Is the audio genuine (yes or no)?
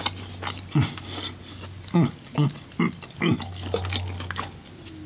yes